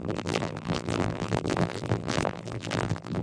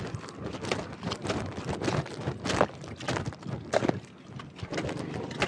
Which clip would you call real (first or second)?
second